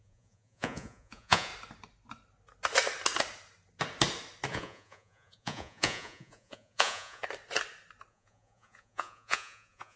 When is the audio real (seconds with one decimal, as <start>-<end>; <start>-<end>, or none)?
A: 1.5-4.5; 7.2-8.1

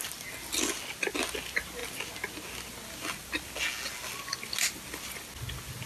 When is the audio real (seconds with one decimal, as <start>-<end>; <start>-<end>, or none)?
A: 0.0-5.9

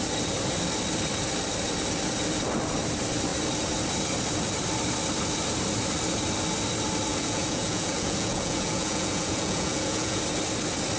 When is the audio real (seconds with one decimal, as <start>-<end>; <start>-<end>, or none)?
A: 0.0-7.1; 10.2-11.0

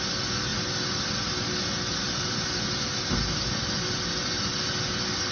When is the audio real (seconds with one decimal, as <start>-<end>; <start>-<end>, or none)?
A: 0.0-5.3

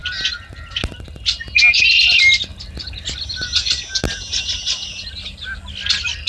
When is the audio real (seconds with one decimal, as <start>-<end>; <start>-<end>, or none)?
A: 0.0-6.3